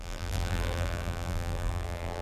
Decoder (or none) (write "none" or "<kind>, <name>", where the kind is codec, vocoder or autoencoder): vocoder, BigVGAN v2